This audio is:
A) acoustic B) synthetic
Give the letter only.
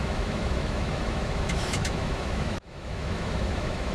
B